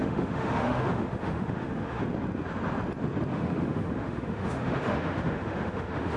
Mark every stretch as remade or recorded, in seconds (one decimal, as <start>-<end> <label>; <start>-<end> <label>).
0.0-2.0 remade; 2.0-3.3 recorded; 3.3-6.2 remade

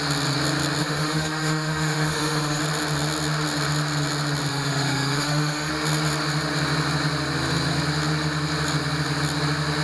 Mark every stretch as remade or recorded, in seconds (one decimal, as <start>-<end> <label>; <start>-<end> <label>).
0.0-0.8 recorded; 0.8-2.6 remade; 2.6-4.5 recorded; 4.5-5.7 remade; 5.7-9.8 recorded

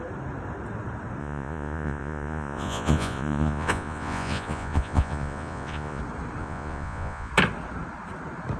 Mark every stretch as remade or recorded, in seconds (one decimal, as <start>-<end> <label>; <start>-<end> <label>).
0.0-1.2 recorded; 1.2-6.0 remade; 6.0-6.4 recorded; 6.4-7.3 remade; 7.3-8.6 recorded

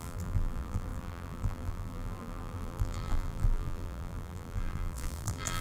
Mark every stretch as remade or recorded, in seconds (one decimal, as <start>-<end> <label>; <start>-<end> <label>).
0.0-5.6 remade

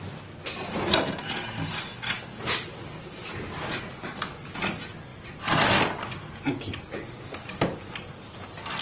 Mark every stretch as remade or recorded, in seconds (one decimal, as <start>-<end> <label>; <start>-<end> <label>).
0.0-5.1 recorded; 5.1-6.8 remade; 6.8-8.8 recorded